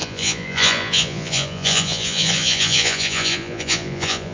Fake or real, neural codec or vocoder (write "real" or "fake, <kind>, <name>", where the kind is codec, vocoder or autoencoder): fake, vocoder, Vocos